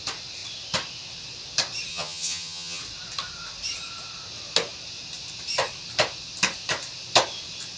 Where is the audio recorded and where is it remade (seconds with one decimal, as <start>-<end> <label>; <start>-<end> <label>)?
0.0-1.9 recorded; 1.9-2.8 remade; 2.8-7.8 recorded